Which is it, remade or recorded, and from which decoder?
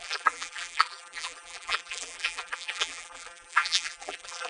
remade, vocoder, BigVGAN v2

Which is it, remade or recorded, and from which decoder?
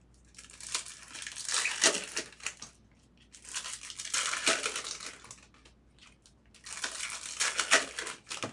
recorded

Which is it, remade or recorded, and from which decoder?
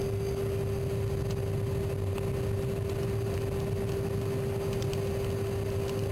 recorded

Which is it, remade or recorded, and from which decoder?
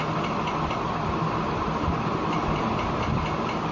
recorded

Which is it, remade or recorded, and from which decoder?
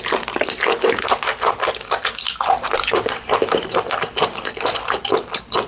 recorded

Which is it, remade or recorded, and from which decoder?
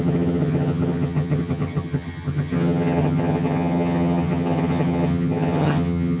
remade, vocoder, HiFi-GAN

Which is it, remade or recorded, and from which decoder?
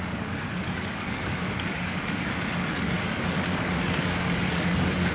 remade, codec, DAC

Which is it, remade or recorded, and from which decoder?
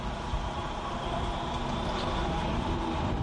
recorded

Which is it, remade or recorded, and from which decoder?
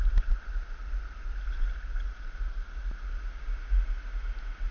recorded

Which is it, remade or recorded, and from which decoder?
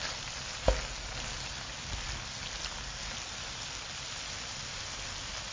recorded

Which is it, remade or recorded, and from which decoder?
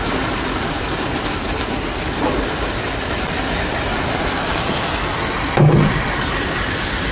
recorded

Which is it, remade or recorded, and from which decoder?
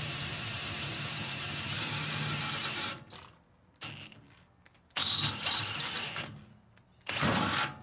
recorded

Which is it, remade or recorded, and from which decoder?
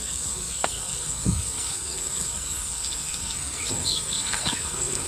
remade, codec, SNAC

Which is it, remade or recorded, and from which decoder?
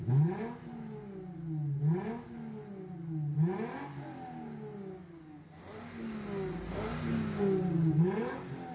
recorded